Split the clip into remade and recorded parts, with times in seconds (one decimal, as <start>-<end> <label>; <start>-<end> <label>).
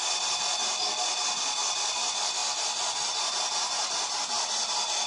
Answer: 0.0-5.1 recorded